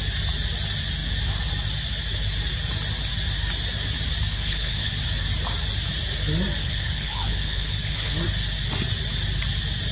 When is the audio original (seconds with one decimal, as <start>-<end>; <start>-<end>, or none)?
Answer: 0.0-4.3; 4.9-6.6; 8.2-9.9